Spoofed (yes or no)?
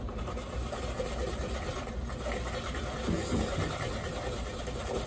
no